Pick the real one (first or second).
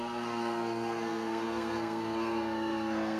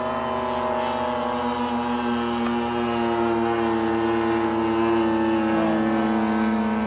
second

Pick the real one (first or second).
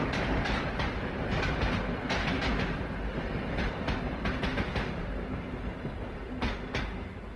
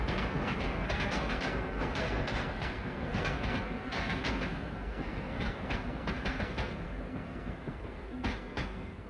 first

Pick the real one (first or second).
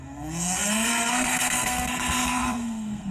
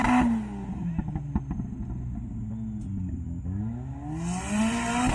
second